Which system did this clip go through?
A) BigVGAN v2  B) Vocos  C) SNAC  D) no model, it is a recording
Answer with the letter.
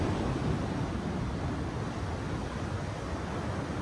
D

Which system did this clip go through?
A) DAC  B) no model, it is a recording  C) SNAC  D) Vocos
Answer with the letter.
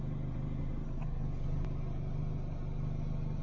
B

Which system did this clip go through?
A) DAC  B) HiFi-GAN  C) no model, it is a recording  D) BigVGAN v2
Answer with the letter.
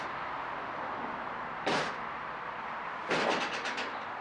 C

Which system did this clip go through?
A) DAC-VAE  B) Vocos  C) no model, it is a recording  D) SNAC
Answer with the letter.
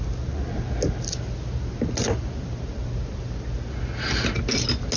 C